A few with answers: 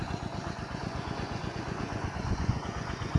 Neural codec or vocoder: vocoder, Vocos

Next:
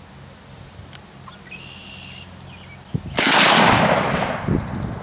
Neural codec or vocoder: none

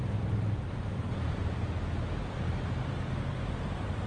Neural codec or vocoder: none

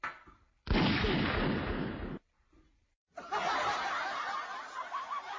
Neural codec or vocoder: none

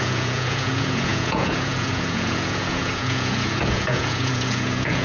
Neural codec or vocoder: vocoder, Vocos